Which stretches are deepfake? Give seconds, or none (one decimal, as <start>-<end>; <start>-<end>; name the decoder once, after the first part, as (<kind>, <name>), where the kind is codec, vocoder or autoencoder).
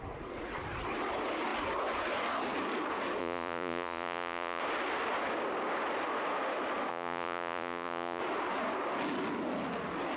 3.2-4.6 (vocoder, Vocos); 6.9-8.2